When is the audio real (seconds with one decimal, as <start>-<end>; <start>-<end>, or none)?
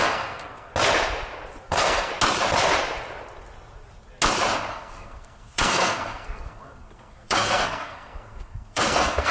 0.7-1.6; 2.1-4.7